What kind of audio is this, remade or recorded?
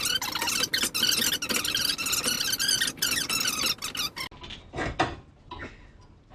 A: recorded